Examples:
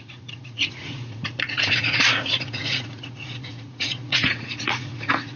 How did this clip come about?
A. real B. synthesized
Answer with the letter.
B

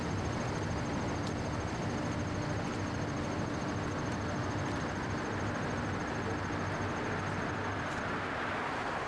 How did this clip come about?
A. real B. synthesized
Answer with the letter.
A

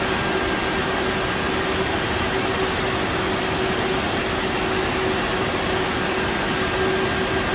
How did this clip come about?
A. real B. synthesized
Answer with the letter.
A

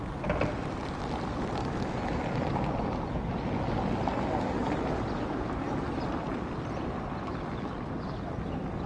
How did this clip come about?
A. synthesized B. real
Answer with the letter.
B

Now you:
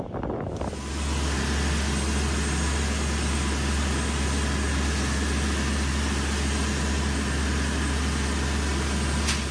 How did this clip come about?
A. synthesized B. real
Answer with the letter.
B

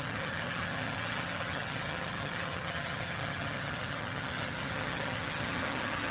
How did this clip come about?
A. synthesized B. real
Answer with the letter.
A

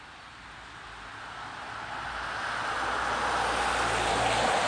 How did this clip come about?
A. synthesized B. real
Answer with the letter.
B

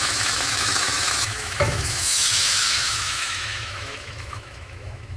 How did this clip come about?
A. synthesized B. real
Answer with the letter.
A